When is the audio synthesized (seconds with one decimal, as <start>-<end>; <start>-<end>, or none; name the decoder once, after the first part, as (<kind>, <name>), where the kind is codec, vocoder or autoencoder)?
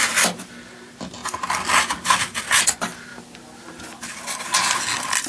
none